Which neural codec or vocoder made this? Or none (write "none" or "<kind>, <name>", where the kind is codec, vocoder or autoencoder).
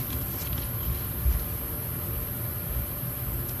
none